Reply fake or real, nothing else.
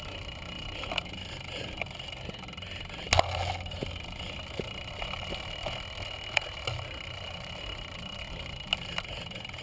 real